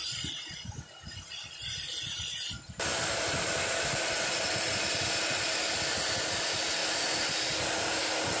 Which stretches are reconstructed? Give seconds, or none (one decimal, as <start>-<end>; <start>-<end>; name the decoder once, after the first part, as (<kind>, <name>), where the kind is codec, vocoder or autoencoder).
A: 2.9-3.9 (vocoder, BigVGAN v2)